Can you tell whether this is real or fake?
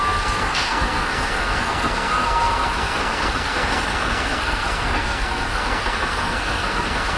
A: fake